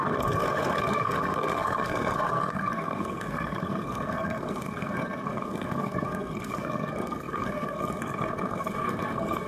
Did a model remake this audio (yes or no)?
yes